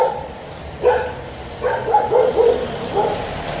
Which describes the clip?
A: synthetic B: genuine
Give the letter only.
B